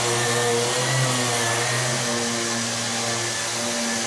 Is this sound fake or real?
real